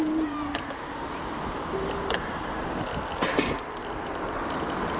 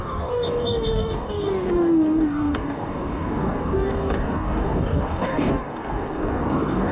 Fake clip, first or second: second